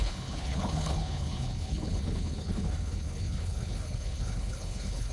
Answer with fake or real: fake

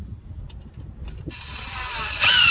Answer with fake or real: real